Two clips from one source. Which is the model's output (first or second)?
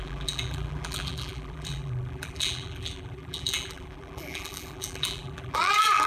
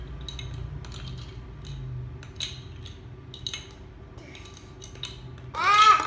first